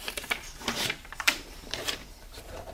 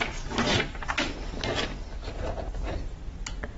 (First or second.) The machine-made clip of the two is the first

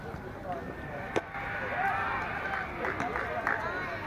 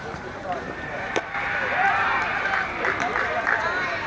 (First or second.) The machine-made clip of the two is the second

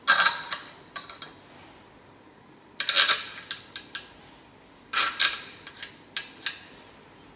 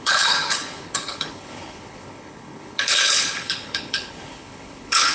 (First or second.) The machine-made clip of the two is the second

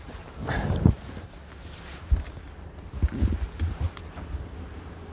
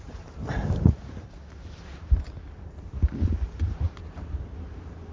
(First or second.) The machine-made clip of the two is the second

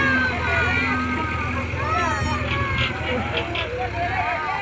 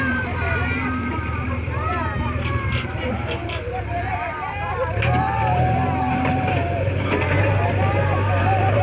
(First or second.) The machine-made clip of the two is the second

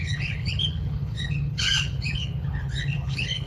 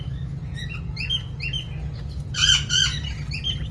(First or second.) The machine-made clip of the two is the first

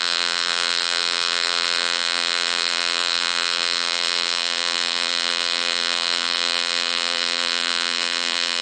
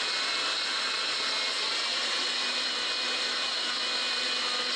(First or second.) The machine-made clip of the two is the first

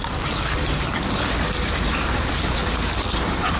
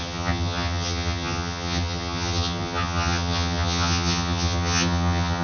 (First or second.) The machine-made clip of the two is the second